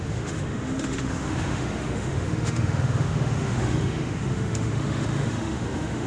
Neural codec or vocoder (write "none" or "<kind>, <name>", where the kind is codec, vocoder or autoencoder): autoencoder, DAC-VAE